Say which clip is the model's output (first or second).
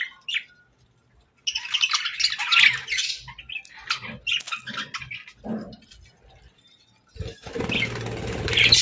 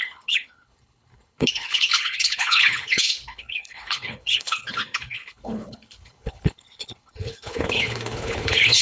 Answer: second